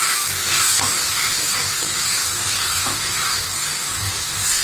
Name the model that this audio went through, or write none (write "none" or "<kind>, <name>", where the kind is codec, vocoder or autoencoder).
codec, DAC